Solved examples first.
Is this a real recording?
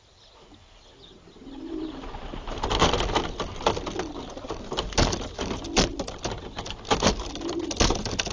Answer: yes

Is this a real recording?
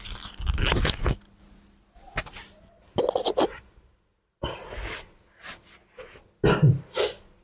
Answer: yes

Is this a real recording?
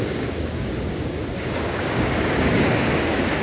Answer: no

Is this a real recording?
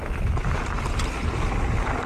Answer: yes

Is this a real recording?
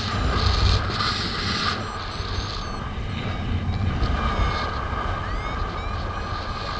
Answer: yes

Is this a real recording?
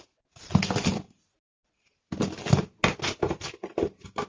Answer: yes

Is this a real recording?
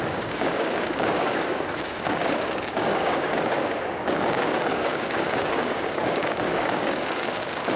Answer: no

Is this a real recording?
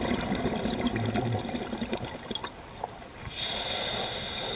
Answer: yes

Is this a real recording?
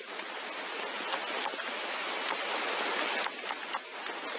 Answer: yes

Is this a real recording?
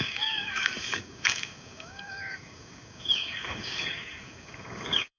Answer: no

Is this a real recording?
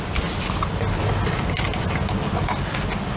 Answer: yes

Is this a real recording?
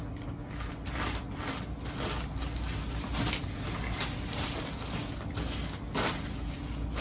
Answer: yes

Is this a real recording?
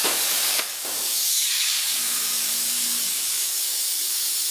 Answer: no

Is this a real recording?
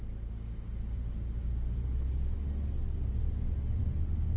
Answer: yes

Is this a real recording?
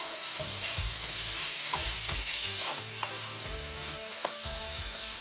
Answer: no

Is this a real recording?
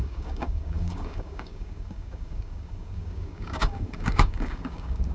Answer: no